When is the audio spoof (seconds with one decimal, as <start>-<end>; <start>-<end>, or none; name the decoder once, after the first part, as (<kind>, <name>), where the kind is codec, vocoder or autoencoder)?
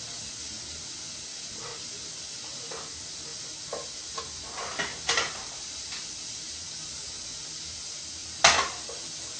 1.7-2.5 (vocoder, BigVGAN v2); 5.4-6.5